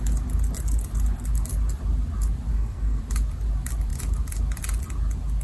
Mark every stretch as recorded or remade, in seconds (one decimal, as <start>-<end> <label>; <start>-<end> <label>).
0.0-2.5 recorded; 2.5-3.0 remade; 3.0-5.4 recorded